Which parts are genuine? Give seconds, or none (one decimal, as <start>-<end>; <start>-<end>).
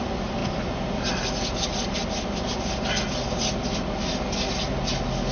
0.0-5.3